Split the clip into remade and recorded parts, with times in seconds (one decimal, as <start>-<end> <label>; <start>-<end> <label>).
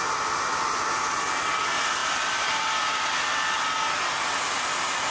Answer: 0.0-5.1 recorded